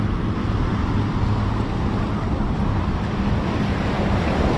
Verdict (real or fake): real